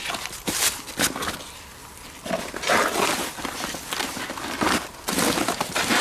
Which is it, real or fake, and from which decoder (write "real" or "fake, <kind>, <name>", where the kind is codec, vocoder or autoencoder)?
real